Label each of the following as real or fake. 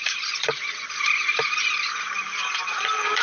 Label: fake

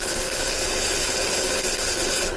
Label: fake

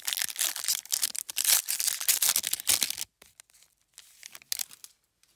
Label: real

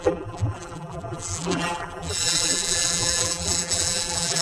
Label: fake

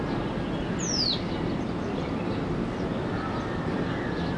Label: real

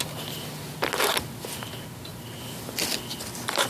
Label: real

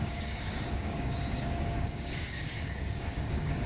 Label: fake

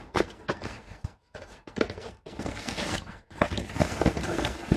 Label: fake